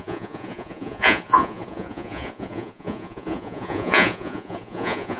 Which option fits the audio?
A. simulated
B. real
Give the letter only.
A